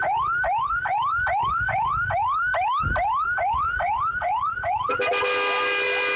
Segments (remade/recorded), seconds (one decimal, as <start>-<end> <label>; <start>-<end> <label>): 0.0-6.2 recorded